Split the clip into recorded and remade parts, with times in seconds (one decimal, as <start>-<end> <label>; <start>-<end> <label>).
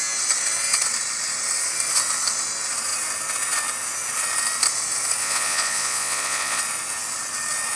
0.0-5.2 recorded; 5.2-6.6 remade; 6.6-7.8 recorded